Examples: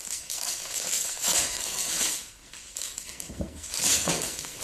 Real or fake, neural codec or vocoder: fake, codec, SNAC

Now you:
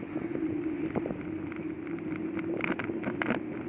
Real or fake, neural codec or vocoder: real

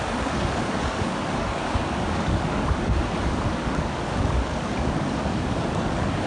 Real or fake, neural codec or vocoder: fake, codec, DAC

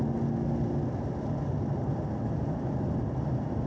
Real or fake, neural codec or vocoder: real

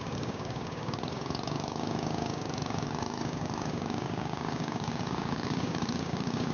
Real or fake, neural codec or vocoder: fake, codec, DAC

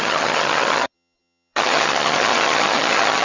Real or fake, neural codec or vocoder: fake, vocoder, HiFi-GAN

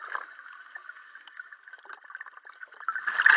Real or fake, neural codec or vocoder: real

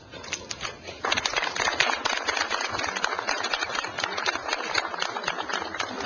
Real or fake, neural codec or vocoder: fake, vocoder, BigVGAN v2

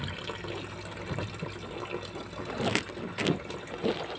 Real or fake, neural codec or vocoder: real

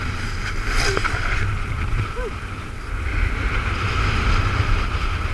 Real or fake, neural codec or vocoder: real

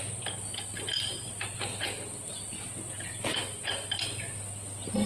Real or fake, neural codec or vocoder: real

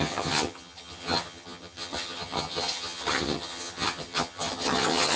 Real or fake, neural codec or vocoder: fake, vocoder, HiFi-GAN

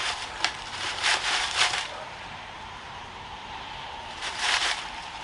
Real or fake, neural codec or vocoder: fake, vocoder, BigVGAN v2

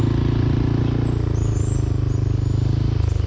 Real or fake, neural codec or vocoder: real